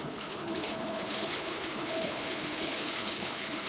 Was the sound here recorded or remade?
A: remade